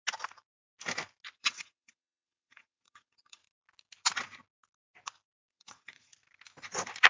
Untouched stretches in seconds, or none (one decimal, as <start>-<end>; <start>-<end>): 0.0-1.4; 3.4-5.5; 6.1-7.1